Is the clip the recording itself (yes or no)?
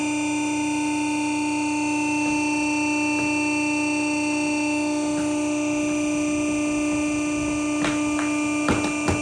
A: yes